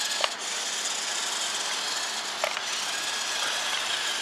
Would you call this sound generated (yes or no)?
no